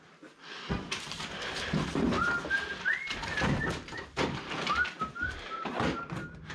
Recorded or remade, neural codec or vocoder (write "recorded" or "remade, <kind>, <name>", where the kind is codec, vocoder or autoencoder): recorded